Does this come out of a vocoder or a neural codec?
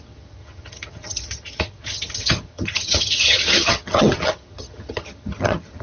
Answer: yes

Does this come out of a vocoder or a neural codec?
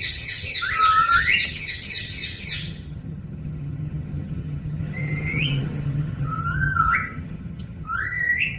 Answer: yes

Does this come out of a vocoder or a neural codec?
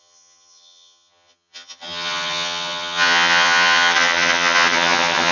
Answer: yes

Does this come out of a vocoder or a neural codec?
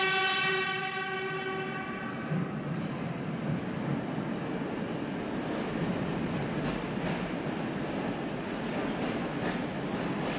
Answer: no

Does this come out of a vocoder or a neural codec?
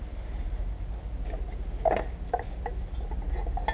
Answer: no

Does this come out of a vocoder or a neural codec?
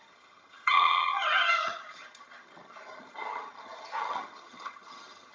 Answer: yes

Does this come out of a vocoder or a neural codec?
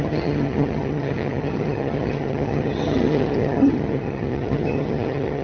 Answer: yes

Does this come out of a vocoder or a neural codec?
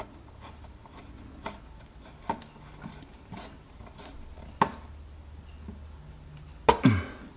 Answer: no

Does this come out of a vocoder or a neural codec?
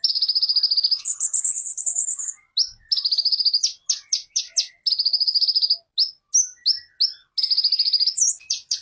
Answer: no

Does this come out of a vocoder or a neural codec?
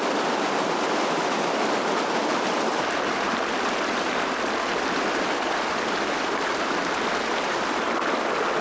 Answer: no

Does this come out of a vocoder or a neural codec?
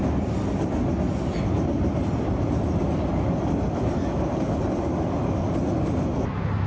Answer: no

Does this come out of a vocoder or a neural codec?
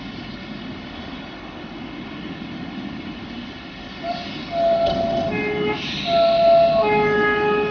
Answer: no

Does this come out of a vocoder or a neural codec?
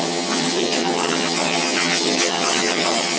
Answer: yes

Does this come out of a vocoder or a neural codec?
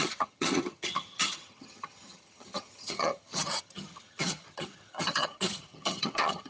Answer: yes